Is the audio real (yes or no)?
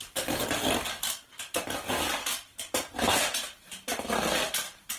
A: yes